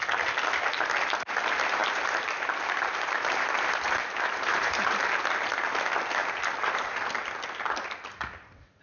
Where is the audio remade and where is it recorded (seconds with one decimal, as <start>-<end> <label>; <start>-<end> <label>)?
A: 0.0-1.8 recorded; 1.8-5.0 remade; 5.0-6.2 recorded; 6.2-7.0 remade; 7.0-8.8 recorded